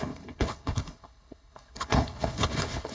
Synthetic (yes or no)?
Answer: yes